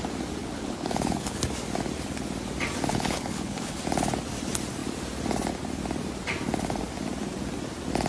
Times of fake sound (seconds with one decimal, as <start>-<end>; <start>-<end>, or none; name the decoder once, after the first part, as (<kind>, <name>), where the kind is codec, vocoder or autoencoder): 0.4-1.4 (codec, HILCodec); 2.9-3.8